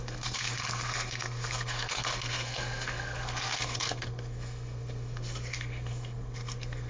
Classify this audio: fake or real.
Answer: fake